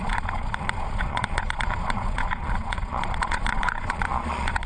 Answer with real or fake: fake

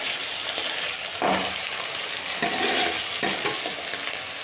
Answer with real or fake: real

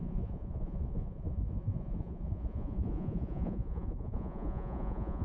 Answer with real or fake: fake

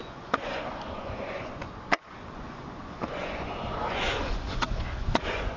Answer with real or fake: fake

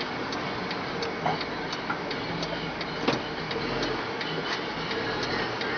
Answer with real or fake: real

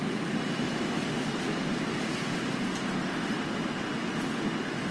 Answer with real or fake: real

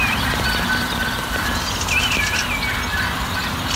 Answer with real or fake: real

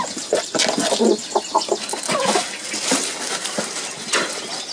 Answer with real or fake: real